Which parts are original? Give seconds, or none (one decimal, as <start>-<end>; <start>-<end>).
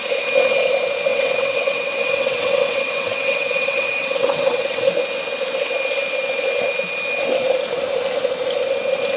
0.0-1.1; 4.8-9.2